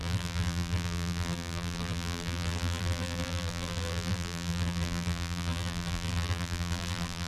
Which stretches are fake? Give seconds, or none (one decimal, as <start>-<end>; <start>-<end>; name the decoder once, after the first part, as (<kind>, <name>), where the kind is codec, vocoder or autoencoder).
0.0-7.3 (vocoder, BigVGAN v2)